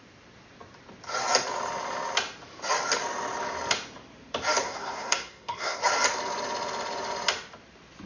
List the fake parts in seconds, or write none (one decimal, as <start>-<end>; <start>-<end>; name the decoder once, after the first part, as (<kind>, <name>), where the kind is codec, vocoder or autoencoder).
4.6-5.8 (codec, SNAC)